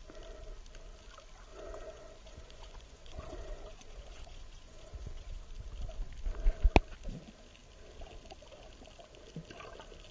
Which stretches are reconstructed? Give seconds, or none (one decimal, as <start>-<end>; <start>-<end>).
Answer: 1.5-5.4